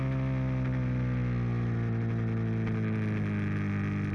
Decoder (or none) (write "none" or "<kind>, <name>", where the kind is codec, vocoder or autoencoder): none